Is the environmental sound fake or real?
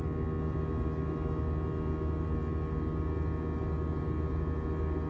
real